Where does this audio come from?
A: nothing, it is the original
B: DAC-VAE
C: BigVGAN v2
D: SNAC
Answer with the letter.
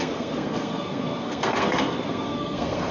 D